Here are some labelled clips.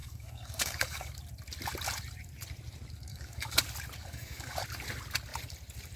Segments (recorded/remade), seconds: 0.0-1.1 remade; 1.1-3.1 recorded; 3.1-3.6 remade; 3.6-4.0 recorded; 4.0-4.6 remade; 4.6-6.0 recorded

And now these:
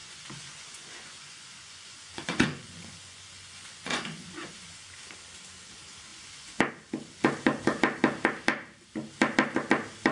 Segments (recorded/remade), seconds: 0.0-5.0 remade; 5.0-6.1 recorded; 6.1-6.7 remade; 6.7-10.1 recorded

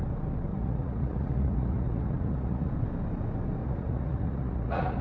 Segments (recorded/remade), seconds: 0.0-0.5 recorded; 0.5-2.7 remade; 2.7-3.6 recorded; 3.6-5.0 remade